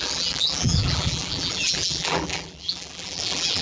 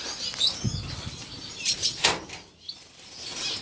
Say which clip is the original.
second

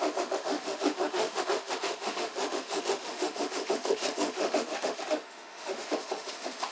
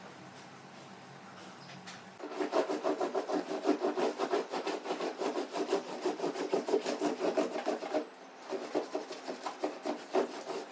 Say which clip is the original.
second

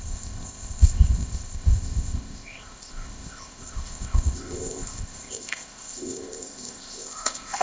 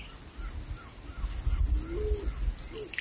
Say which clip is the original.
second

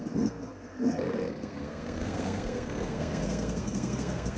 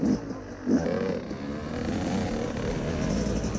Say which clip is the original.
second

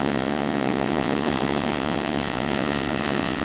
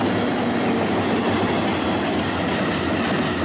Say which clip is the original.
second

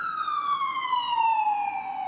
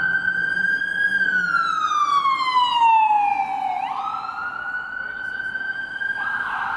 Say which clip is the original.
second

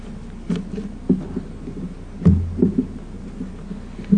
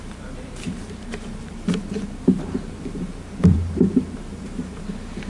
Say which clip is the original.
first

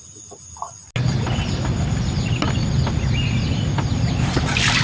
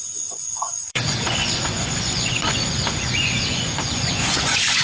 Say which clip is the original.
first